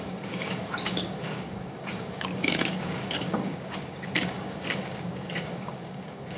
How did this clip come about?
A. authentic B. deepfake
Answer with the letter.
B